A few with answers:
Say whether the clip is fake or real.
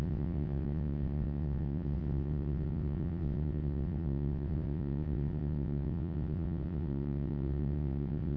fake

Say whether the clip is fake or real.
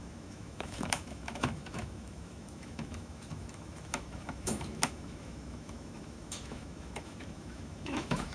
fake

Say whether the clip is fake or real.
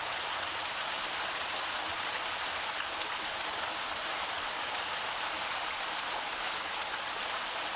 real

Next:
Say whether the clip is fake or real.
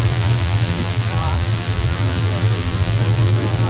fake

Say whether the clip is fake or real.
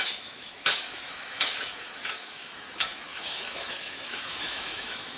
fake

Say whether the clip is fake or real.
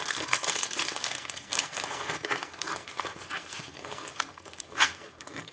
fake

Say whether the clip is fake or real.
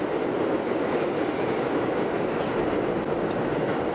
real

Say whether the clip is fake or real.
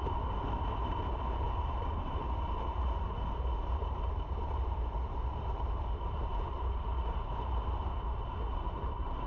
fake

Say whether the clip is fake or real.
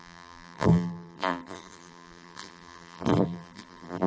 fake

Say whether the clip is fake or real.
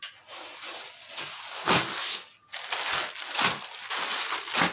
real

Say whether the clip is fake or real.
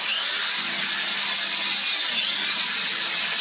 real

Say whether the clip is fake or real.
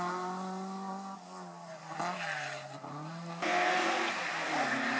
real